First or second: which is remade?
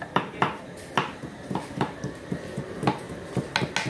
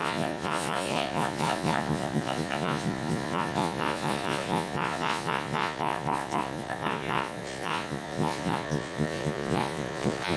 second